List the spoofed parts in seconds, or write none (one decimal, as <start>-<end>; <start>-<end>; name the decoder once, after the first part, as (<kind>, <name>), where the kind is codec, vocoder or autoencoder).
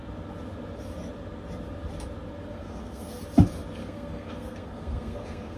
2.5-3.2 (codec, SNAC); 3.8-5.6